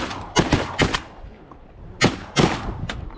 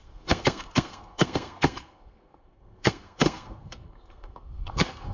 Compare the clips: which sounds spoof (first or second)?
second